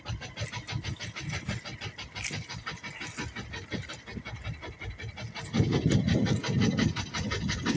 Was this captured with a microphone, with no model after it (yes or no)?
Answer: yes